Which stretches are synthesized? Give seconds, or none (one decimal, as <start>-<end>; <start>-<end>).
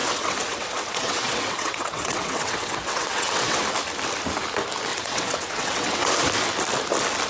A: 0.0-3.6; 4.9-6.1